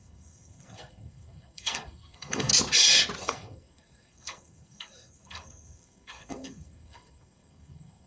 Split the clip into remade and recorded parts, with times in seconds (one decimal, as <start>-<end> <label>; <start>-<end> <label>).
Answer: 0.0-2.5 remade; 2.5-3.2 recorded; 3.2-8.1 remade